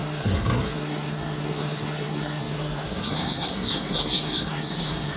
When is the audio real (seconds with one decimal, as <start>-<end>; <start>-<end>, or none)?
none